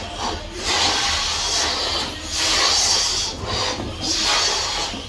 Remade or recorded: recorded